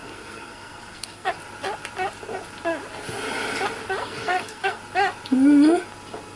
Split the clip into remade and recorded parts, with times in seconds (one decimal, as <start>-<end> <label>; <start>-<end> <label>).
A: 0.0-1.3 remade; 1.3-4.0 recorded; 4.0-4.8 remade; 4.8-6.4 recorded